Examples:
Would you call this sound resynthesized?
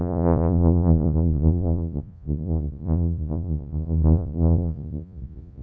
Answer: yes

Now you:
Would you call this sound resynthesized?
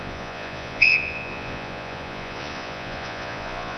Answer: yes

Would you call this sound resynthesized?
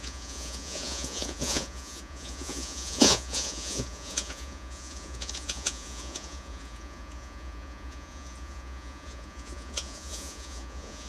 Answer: yes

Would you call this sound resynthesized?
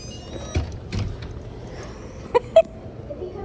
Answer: no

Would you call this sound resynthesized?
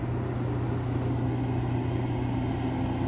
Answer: no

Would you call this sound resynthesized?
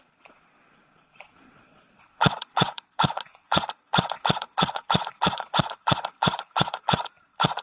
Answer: yes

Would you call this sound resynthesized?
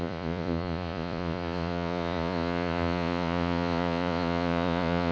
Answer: yes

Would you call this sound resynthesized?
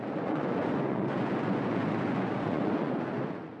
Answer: yes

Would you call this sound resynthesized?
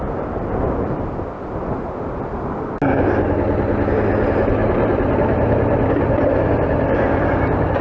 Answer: no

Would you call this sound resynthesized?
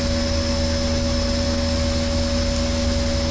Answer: no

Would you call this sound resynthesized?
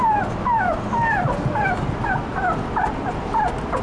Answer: no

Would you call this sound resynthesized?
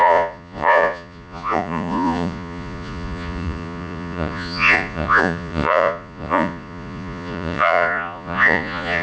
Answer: yes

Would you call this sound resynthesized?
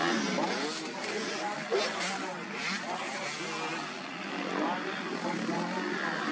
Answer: no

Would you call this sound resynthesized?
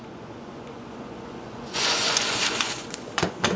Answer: yes